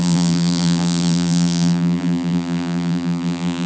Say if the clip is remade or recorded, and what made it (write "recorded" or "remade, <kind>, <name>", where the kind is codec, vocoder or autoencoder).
remade, vocoder, BigVGAN v2